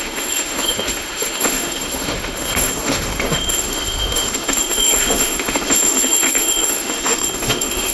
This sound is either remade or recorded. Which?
remade